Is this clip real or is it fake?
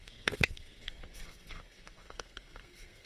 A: fake